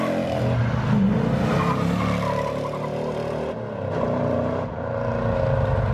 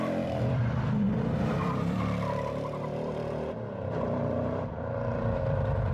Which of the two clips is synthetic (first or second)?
second